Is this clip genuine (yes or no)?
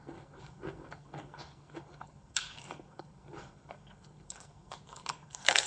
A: no